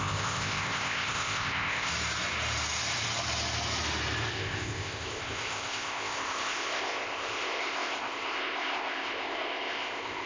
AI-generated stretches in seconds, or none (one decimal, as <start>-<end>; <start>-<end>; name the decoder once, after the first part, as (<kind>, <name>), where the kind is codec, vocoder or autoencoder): 0.0-1.9 (codec, ZipCodec); 4.3-10.3